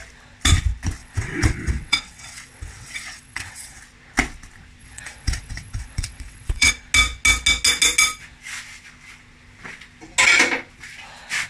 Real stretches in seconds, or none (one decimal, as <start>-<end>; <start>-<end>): 0.0-1.0; 3.8-4.8; 6.7-11.5